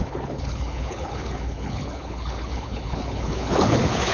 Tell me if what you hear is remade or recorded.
remade